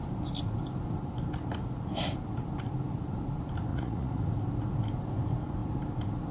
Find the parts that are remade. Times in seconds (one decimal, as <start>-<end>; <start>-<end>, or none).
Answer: 3.7-4.3